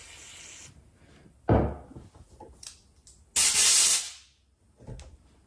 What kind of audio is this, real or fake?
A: real